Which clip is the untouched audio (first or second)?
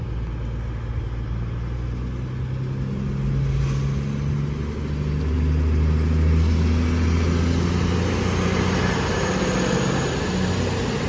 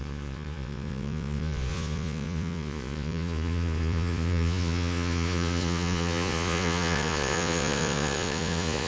first